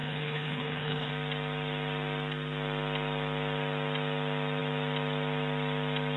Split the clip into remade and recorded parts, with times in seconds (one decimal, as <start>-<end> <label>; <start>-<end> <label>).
0.0-1.1 remade; 1.1-6.2 recorded